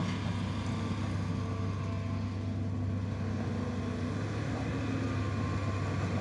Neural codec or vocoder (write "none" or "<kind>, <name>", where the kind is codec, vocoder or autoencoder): none